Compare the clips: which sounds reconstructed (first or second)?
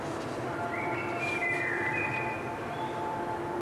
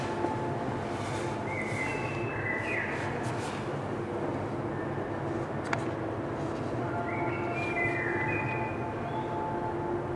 first